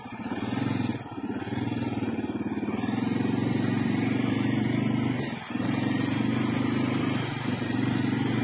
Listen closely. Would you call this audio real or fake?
fake